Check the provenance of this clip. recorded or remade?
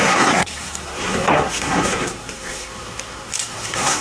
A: remade